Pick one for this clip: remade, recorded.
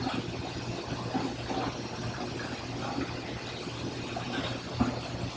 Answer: recorded